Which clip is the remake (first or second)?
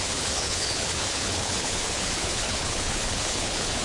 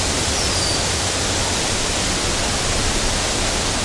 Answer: first